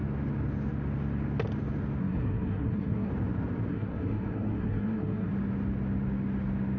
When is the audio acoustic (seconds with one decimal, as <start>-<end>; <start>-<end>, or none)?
0.0-2.0; 3.1-3.7; 5.3-6.8